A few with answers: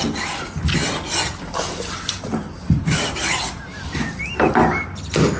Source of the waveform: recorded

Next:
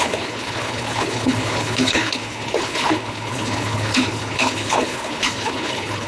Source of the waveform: remade